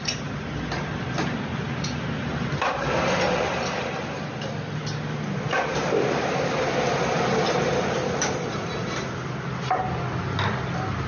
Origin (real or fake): real